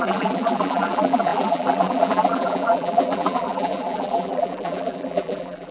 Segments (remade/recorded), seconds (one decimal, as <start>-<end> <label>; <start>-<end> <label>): 0.0-5.7 remade